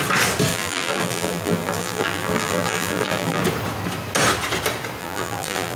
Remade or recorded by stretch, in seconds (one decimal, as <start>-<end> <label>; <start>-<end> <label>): 0.0-0.5 recorded; 0.5-3.4 remade; 3.4-5.0 recorded; 5.0-5.8 remade